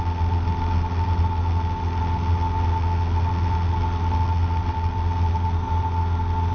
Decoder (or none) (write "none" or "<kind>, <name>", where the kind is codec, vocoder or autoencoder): none